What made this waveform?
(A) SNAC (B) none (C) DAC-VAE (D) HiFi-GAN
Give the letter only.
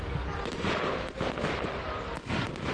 B